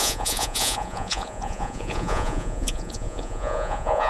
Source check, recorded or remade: remade